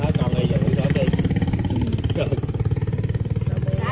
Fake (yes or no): no